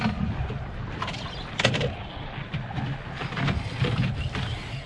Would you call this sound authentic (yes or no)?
yes